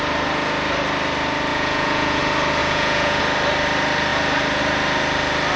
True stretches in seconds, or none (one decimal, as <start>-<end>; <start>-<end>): 0.0-1.5; 2.2-2.6; 3.2-5.6